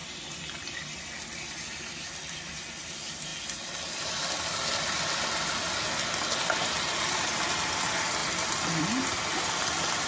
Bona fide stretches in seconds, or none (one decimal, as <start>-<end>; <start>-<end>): 0.0-10.1